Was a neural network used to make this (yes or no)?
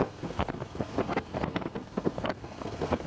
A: yes